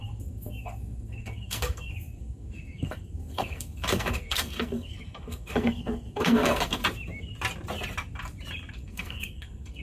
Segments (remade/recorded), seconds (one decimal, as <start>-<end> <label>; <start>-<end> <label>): 0.0-6.8 remade; 6.8-8.7 recorded; 8.7-9.8 remade